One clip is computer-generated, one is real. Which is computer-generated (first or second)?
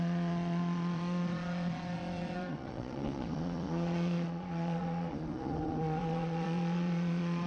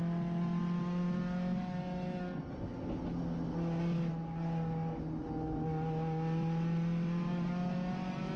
first